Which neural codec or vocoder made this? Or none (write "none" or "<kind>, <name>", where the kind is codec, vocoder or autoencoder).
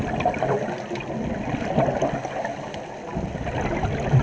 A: none